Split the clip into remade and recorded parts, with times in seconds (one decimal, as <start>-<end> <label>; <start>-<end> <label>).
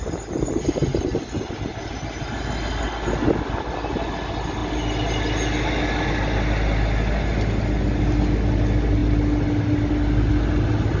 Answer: 0.0-11.0 recorded